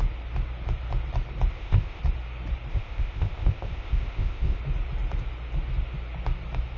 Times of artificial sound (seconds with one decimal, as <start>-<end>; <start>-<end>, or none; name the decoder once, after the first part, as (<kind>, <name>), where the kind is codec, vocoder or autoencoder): 1.5-2.0 (codec, ZipCodec); 2.7-4.6